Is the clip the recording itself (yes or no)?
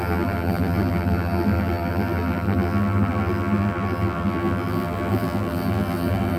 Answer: no